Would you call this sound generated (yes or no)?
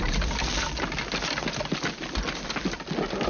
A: no